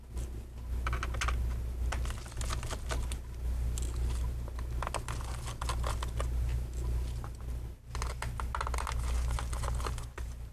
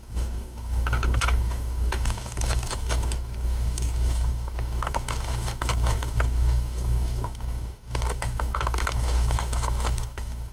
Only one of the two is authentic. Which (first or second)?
first